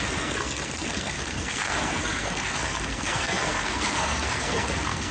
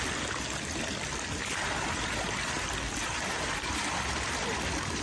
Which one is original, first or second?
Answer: second